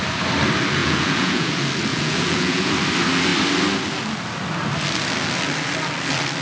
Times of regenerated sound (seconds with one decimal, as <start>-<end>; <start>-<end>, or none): 0.8-1.5; 1.9-2.7